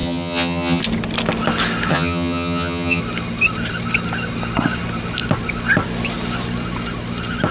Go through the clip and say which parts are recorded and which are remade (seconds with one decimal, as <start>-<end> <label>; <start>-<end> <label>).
0.0-0.8 remade; 0.8-1.9 recorded; 1.9-3.0 remade; 3.0-7.5 recorded